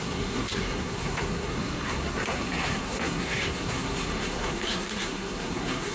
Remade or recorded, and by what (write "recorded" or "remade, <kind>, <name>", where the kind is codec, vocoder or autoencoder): remade, codec, SNAC